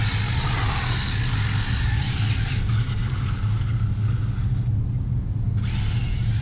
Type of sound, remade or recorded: recorded